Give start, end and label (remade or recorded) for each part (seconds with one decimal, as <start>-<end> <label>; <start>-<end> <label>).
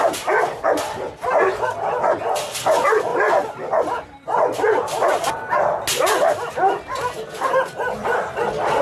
0.0-8.8 recorded